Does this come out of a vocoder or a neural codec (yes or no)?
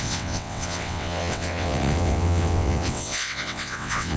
yes